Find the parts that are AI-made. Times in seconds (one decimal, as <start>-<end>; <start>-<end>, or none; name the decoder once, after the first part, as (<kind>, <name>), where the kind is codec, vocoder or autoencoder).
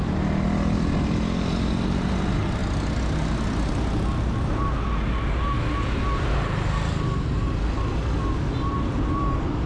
none